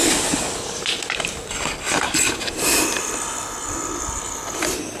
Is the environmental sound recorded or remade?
recorded